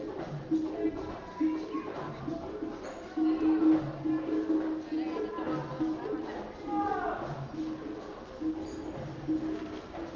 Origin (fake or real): real